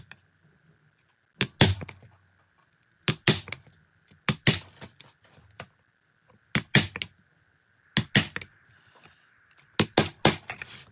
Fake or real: real